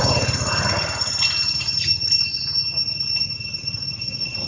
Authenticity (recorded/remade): recorded